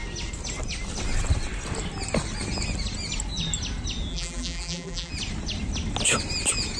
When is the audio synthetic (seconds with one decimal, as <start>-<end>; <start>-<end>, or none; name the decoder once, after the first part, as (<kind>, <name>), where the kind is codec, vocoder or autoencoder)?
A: 4.1-5.1 (vocoder, BigVGAN v2)